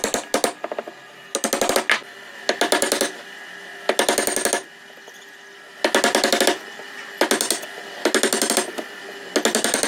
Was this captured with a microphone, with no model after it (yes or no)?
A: yes